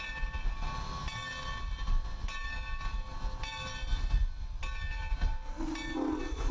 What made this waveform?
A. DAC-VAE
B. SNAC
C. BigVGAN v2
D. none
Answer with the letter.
D